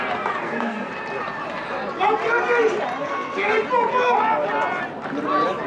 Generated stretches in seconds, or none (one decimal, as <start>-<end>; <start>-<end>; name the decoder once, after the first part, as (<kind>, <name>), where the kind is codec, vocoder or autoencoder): 0.4-0.9 (codec, SNAC); 3.0-3.5